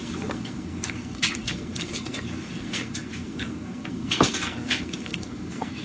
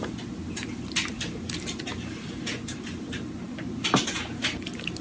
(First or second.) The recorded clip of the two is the second